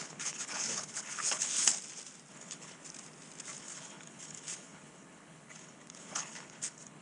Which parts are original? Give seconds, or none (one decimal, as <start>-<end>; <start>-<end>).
1.7-2.3; 2.8-3.6